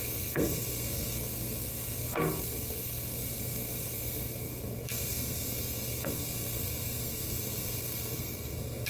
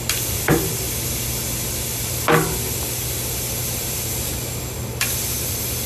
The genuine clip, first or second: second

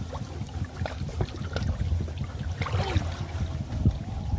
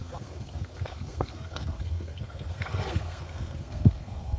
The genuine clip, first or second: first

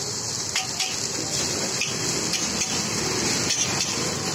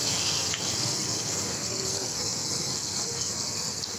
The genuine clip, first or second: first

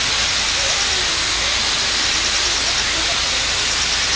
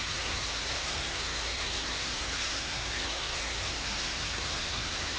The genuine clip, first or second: first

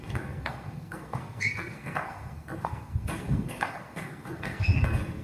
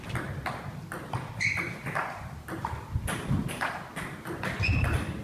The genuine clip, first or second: second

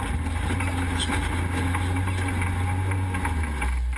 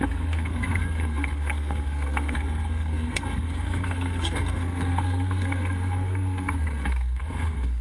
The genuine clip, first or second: first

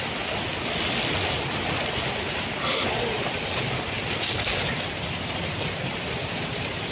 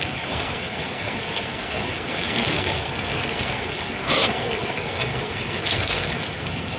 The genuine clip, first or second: first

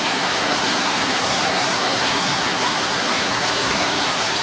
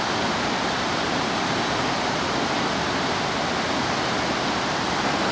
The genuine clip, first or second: second